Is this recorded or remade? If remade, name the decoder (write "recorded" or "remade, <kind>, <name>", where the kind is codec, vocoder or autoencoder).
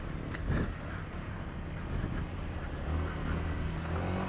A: recorded